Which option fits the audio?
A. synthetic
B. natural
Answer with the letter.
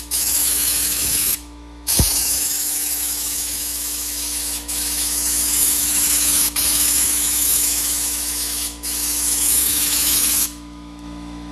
A